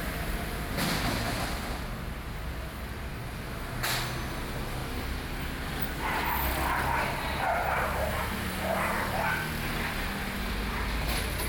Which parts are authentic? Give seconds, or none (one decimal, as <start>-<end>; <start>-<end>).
0.0-11.5